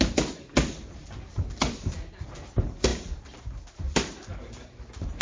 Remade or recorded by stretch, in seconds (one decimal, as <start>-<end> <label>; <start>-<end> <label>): 0.0-5.2 recorded